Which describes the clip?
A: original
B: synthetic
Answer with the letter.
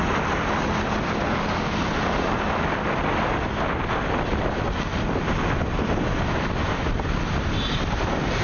A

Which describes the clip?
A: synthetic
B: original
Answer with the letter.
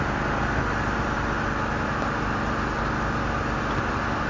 B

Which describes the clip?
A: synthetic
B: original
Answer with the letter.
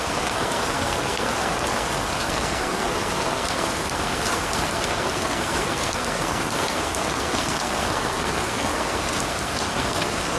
A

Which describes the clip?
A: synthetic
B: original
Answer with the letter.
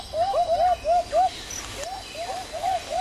B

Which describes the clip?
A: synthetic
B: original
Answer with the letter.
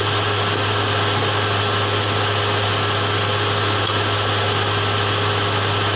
B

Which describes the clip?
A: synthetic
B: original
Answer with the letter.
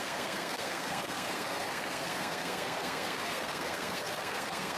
A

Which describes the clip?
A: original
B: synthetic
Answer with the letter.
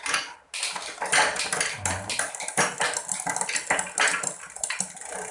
A